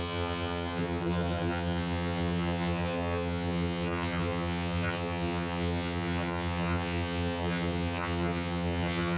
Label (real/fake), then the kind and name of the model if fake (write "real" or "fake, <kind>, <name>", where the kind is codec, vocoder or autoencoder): fake, vocoder, HiFi-GAN